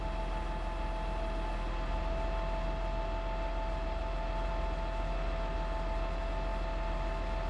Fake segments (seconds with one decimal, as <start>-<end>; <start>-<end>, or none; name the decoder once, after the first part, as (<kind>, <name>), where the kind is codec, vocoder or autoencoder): none